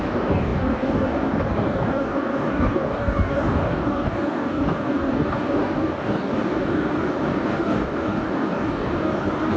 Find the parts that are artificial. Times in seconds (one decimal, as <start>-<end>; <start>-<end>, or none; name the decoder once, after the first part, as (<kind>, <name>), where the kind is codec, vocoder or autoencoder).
0.0-9.6 (codec, DAC)